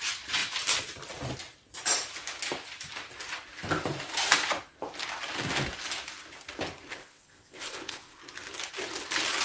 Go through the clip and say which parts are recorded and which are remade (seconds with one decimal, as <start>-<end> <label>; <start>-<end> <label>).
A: 0.0-6.9 recorded; 6.9-8.2 remade; 8.2-9.4 recorded